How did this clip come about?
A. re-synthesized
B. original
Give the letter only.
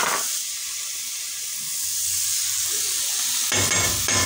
B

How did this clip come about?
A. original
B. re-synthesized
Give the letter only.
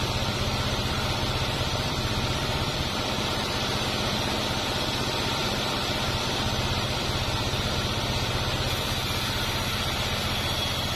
B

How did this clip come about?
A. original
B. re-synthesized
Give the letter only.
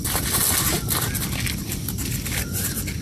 A